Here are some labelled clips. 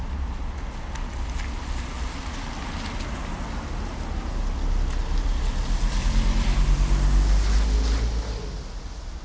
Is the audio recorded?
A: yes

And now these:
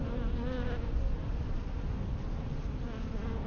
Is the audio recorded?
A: yes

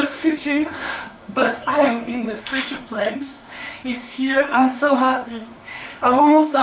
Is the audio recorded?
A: no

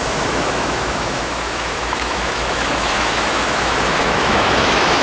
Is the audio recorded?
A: no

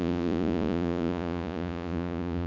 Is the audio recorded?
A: no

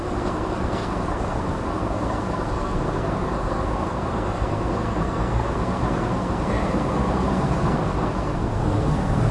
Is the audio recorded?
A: no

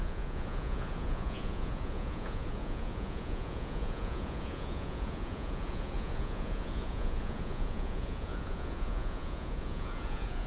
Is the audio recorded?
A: no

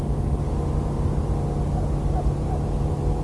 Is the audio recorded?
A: yes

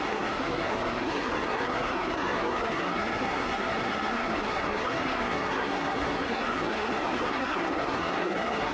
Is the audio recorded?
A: no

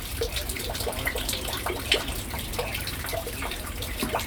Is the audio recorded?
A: no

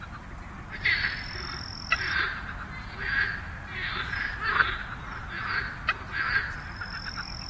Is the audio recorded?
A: yes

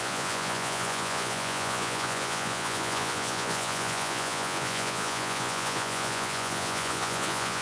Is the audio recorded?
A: no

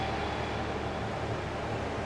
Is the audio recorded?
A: yes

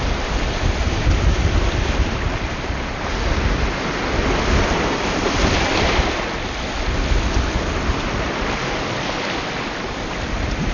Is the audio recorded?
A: yes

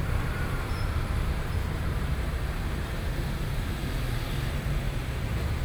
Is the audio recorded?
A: no